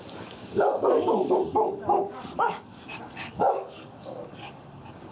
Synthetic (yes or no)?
yes